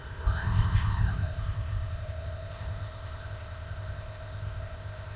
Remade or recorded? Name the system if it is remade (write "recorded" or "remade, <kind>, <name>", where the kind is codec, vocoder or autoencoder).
remade, codec, ZipCodec